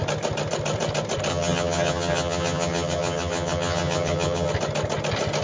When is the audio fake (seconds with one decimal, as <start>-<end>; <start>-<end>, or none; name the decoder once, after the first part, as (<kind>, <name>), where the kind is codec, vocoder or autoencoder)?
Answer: 1.3-4.5 (vocoder, HiFi-GAN)